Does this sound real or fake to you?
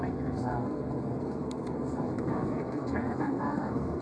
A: fake